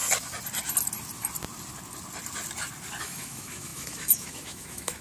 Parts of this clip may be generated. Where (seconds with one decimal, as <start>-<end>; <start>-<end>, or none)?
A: 3.0-5.0